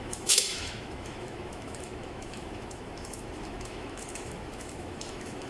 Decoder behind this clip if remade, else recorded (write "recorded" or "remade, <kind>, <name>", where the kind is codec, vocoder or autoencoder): remade, autoencoder, DAC-VAE